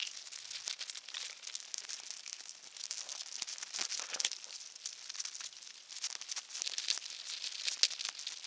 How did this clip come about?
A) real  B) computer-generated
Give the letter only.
A